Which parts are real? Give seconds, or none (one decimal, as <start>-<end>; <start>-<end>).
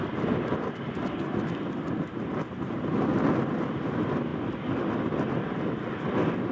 0.0-6.5